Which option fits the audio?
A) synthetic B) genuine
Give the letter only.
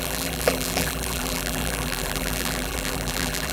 A